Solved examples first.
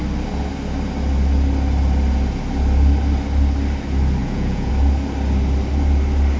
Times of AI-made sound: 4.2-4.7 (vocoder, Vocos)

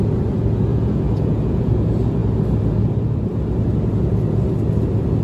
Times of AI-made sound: 0.7-1.7 (vocoder, Vocos)

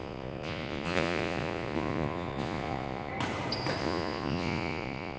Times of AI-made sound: 0.0-3.1 (vocoder, Vocos); 3.8-5.2

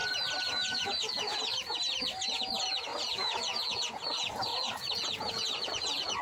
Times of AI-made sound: 0.5-1.5 (vocoder, Vocos); 2.3-6.2

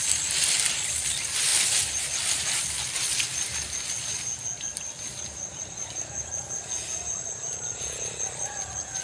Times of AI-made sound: none